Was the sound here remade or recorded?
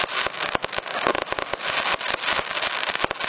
recorded